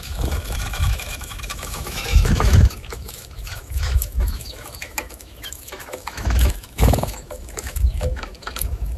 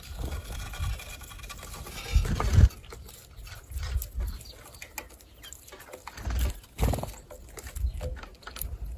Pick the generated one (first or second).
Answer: first